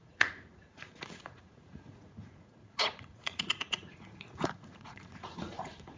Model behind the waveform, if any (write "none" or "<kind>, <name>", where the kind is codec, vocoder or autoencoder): vocoder, Vocos